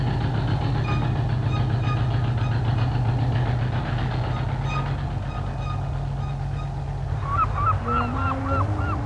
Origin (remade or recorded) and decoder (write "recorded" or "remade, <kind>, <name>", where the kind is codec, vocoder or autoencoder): recorded